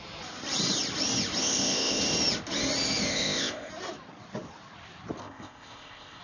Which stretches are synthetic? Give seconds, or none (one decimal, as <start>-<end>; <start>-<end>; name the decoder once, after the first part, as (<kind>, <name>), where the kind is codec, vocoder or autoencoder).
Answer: 1.4-2.0 (codec, ZipCodec); 3.1-3.7; 5.2-6.2